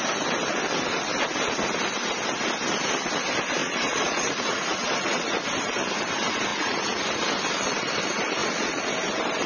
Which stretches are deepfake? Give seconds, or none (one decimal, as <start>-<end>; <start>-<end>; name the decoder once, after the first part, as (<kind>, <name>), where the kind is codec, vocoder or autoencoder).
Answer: 3.6-5.4 (vocoder, Vocos); 6.5-7.0; 8.4-8.9